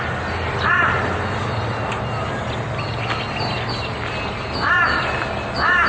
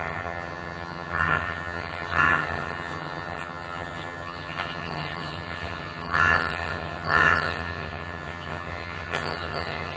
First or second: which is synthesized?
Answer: second